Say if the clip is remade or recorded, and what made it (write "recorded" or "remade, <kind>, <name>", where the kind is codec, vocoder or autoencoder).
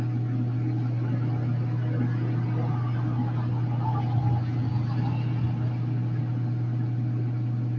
recorded